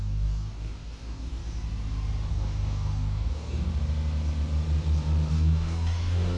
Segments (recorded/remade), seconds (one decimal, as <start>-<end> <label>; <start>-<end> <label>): 0.0-1.4 remade; 1.4-2.3 recorded; 2.3-3.7 remade; 3.7-5.3 recorded; 5.3-6.4 remade